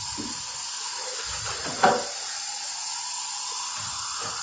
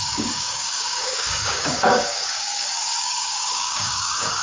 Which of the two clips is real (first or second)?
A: first